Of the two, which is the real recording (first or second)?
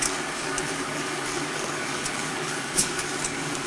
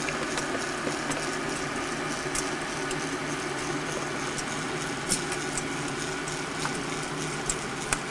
second